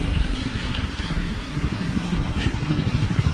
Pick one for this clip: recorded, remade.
remade